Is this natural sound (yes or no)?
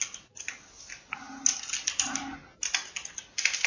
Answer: yes